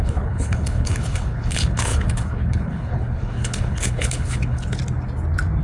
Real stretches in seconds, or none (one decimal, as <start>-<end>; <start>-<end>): 4.8-5.6